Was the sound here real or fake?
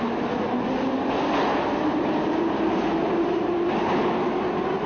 real